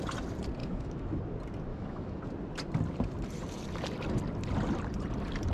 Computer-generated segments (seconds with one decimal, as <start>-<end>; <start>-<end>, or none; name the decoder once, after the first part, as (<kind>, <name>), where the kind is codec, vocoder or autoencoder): 0.6-1.2 (autoencoder, DAC-VAE); 1.7-2.2